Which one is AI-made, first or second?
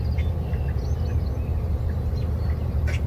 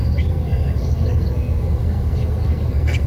second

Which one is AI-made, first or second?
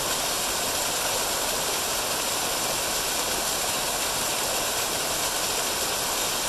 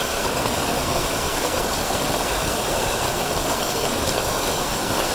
second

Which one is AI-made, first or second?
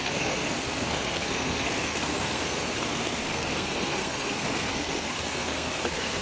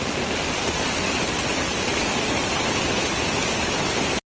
first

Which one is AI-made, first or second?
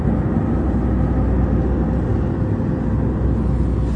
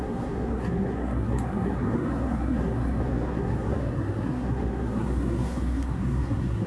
second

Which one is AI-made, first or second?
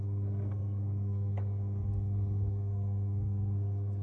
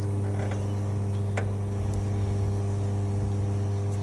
first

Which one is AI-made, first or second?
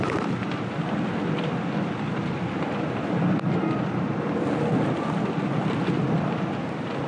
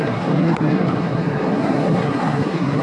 second